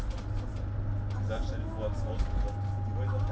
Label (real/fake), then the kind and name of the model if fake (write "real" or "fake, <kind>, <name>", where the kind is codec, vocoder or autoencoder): real